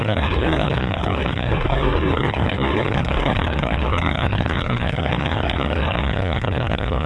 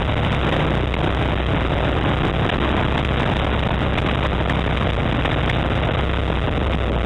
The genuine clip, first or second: second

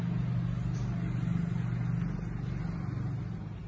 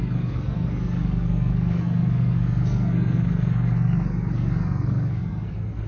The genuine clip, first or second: first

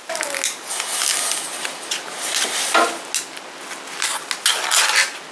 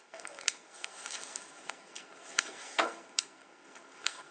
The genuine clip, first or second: first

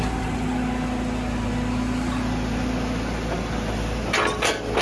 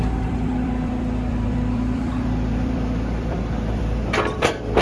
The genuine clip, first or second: first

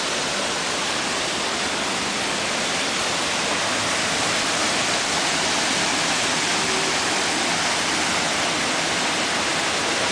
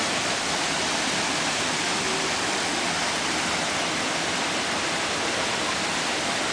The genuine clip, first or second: first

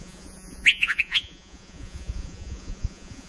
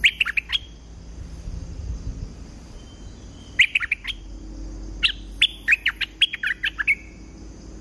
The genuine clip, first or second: second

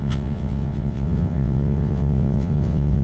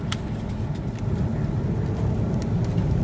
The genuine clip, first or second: second